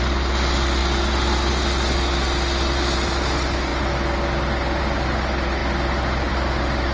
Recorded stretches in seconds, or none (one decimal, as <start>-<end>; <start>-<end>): 0.0-6.9